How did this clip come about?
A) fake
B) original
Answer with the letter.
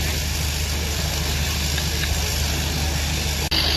B